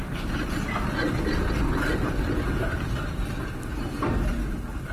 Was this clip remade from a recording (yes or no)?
no